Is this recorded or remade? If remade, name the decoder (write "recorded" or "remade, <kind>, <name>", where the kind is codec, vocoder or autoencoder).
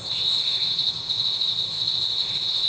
remade, codec, ZipCodec